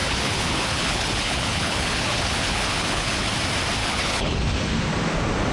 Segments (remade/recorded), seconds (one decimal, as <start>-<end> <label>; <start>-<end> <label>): 0.0-3.3 remade; 3.3-3.8 recorded; 3.8-4.4 remade; 4.4-5.5 recorded